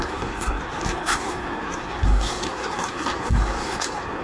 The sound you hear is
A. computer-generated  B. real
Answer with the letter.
A